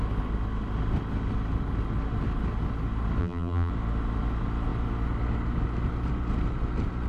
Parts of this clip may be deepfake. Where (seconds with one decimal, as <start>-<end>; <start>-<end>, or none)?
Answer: 3.2-3.7